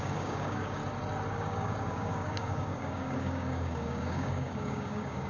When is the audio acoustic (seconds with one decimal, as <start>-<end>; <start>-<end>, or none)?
0.8-1.3